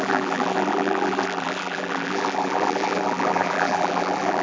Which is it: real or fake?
fake